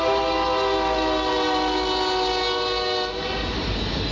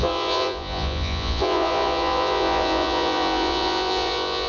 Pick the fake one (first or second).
second